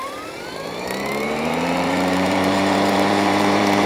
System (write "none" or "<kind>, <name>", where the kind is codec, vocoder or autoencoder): vocoder, BigVGAN v2